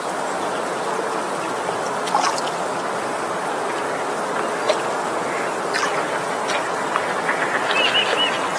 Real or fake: real